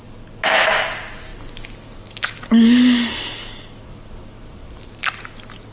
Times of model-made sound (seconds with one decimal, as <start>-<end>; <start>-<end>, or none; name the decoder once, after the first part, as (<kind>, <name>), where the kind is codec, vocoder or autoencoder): 4.3-5.1 (vocoder, BigVGAN v2)